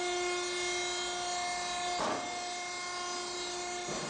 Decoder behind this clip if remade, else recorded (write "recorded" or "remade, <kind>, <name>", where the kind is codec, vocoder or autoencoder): recorded